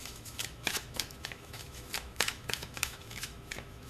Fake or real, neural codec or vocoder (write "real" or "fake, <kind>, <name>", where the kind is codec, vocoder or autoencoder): fake, autoencoder, DAC-VAE